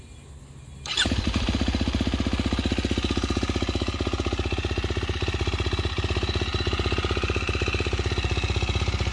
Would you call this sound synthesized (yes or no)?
no